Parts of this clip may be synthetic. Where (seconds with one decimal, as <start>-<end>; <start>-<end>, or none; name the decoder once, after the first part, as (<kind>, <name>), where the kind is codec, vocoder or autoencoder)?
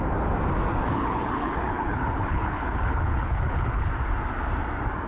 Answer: 0.8-3.9 (codec, HILCodec)